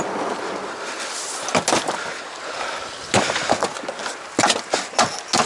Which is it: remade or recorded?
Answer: recorded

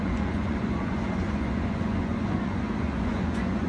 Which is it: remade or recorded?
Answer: remade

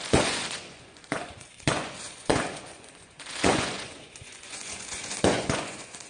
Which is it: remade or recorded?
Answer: remade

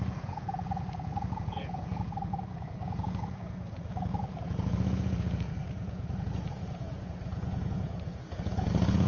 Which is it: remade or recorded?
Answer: remade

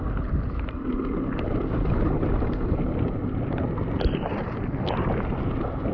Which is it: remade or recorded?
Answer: recorded